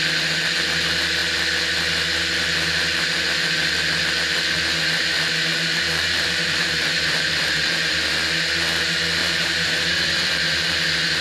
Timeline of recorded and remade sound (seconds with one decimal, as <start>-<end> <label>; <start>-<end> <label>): 0.0-5.1 recorded; 5.1-8.1 remade; 8.1-9.2 recorded; 9.2-11.2 remade